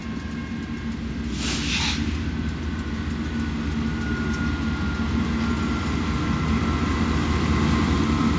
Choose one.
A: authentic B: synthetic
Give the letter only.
A